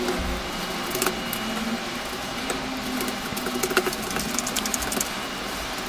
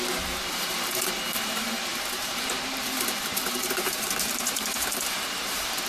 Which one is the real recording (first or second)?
first